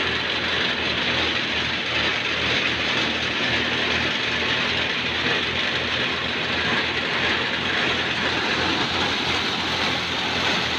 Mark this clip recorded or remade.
remade